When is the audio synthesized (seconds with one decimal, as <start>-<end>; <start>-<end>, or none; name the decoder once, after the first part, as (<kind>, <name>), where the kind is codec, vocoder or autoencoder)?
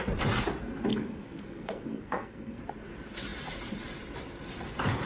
0.9-2.6 (codec, SNAC)